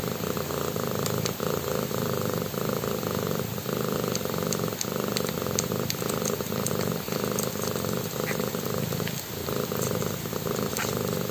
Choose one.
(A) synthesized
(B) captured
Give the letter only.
B